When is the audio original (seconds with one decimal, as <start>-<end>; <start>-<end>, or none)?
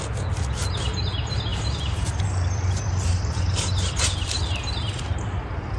0.0-1.5; 5.0-5.8